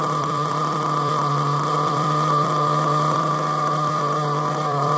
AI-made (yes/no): yes